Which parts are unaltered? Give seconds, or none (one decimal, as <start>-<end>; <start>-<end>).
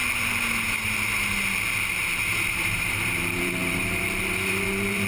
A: 0.0-2.5